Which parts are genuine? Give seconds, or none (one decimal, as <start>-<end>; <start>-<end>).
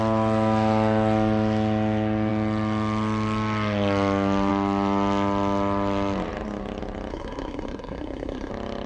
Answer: 0.0-7.1; 8.5-8.9